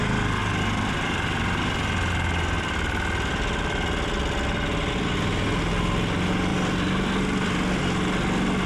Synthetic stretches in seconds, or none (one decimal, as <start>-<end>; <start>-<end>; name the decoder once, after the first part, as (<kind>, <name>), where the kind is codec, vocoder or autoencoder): none